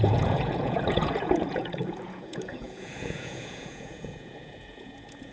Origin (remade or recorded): remade